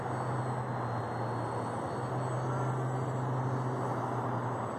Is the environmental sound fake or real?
real